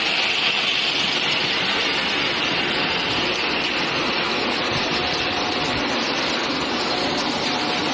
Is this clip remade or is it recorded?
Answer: recorded